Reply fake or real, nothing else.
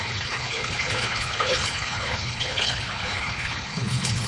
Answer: fake